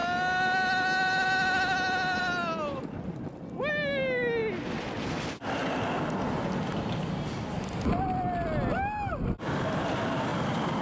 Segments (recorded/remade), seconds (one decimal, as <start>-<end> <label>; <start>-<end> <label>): 0.0-10.8 recorded